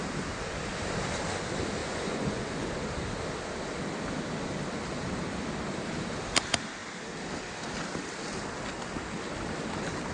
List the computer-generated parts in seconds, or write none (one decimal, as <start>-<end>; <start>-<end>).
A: 1.8-2.7